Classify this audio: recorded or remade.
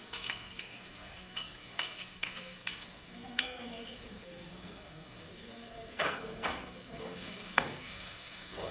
remade